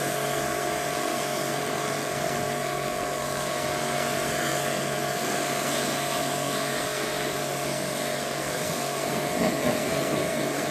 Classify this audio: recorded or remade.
remade